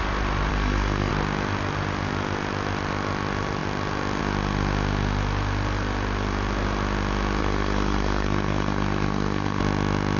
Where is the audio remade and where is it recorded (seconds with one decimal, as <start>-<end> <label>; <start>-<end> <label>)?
0.0-0.5 recorded; 0.5-1.1 remade; 1.1-7.4 recorded; 7.4-9.6 remade; 9.6-10.2 recorded